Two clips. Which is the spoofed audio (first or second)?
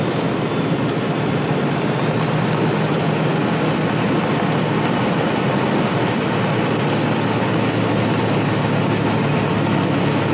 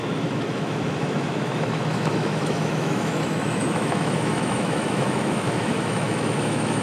second